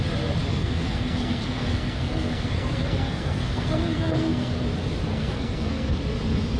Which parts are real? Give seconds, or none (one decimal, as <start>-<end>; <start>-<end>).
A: 0.0-0.5; 4.5-5.1; 6.0-6.6